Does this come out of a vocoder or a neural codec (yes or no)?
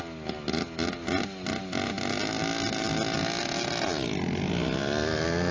no